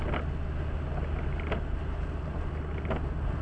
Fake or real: real